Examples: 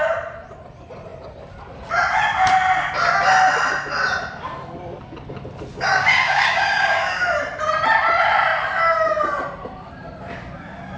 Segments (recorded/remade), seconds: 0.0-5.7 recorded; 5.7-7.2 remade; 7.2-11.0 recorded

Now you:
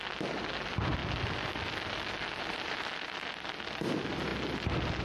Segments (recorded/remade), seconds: 0.0-5.0 recorded